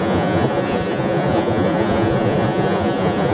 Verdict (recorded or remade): remade